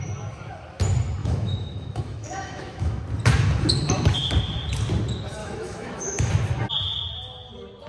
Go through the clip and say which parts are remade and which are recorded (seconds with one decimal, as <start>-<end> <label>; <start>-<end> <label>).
0.0-1.2 recorded; 1.2-3.0 remade; 3.0-5.4 recorded; 5.4-6.3 remade; 6.3-7.9 recorded